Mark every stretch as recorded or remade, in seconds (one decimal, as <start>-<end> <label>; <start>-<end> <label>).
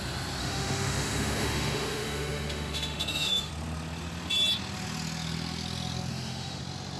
0.0-0.4 recorded; 0.4-3.5 remade; 3.5-6.1 recorded; 6.1-6.6 remade; 6.6-7.0 recorded